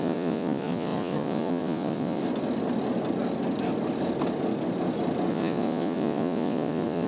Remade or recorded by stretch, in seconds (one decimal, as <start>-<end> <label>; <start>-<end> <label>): 0.0-2.2 remade; 2.2-5.3 recorded; 5.3-7.1 remade